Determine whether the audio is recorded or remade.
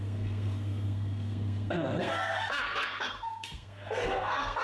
remade